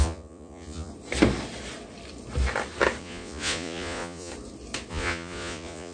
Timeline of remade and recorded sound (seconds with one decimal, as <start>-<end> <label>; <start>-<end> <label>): 0.0-0.9 remade; 0.9-3.0 recorded; 3.0-4.3 remade; 4.3-4.9 recorded; 4.9-5.9 remade